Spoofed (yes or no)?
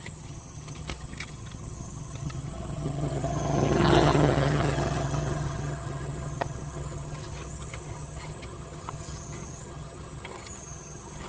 yes